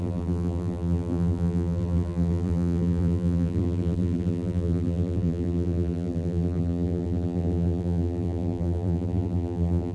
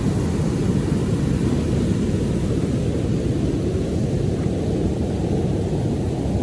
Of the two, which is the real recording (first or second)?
second